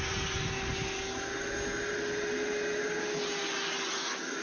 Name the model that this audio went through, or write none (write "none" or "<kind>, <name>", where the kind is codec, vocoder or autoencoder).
none